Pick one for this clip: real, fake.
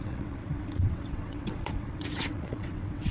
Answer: fake